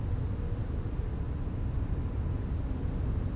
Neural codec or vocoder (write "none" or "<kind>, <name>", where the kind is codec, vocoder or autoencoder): none